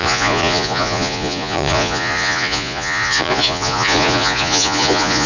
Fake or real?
fake